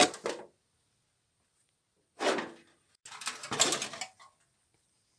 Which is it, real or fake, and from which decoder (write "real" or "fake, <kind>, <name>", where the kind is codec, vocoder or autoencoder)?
real